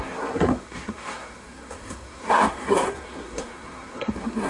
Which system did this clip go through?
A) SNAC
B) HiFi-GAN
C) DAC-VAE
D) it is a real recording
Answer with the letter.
A